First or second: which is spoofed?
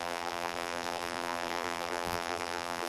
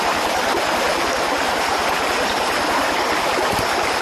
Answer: first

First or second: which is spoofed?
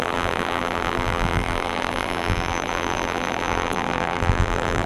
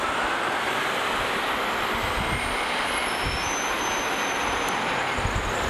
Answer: first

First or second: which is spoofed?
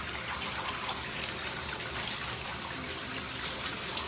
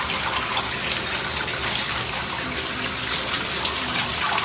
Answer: first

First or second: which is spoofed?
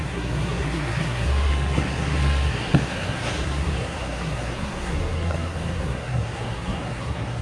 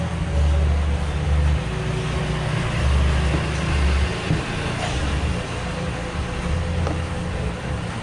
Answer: first